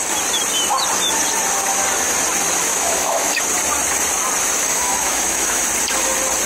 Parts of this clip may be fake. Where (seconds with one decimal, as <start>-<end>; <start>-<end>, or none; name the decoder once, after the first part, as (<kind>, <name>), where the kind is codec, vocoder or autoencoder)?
2.7-3.4 (autoencoder, DAC-VAE); 4.7-5.6